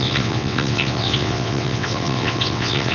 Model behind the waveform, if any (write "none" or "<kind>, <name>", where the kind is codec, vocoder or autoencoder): vocoder, WaveNeXt